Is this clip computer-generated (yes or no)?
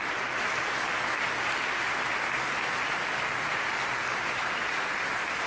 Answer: no